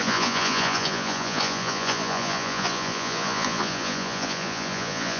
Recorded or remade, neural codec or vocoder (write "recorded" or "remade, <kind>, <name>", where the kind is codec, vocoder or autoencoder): remade, vocoder, Vocos